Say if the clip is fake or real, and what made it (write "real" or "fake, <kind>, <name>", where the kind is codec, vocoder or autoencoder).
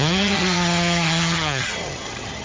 fake, vocoder, HiFi-GAN